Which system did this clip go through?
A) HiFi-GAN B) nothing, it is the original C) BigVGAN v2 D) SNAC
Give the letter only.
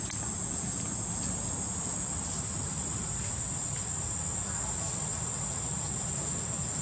B